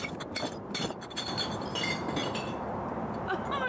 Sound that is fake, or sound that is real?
real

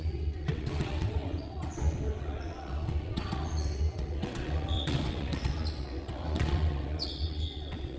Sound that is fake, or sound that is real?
fake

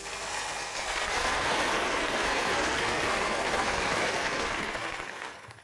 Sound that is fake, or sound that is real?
fake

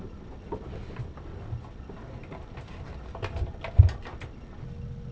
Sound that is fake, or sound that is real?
real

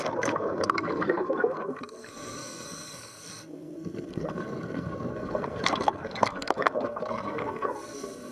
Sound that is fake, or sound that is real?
fake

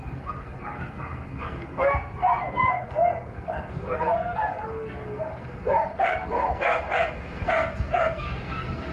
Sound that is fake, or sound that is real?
fake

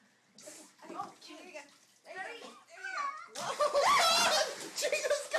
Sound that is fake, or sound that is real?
real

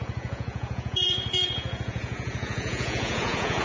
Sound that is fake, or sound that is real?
fake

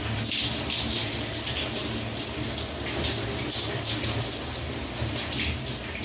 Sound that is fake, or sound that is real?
real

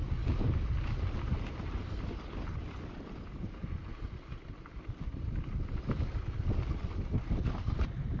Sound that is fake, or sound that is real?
real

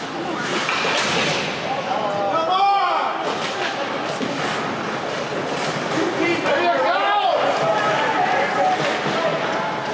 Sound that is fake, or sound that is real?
real